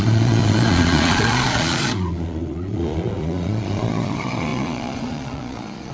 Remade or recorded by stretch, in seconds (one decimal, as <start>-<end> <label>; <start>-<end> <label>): 0.0-5.9 remade